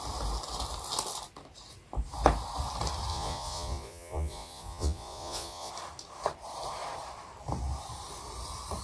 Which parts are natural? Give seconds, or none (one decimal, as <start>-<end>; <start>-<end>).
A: 0.0-3.1; 5.7-8.8